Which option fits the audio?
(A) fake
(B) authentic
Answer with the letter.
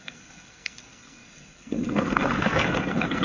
A